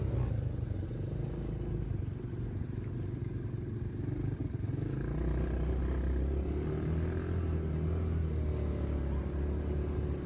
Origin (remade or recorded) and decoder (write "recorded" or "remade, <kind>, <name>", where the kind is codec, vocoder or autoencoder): recorded